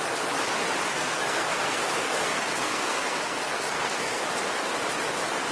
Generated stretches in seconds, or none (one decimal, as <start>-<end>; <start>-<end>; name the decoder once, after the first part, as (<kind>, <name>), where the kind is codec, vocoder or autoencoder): 0.9-4.2 (codec, SNAC)